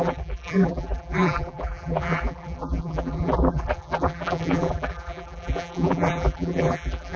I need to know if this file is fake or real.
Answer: fake